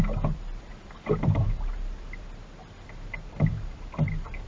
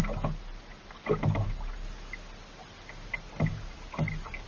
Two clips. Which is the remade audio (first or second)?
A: first